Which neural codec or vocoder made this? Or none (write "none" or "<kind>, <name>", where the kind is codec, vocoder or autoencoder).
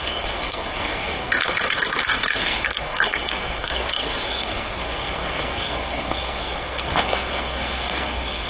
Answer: codec, SNAC